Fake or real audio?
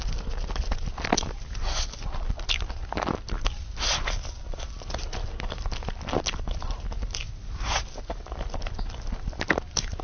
real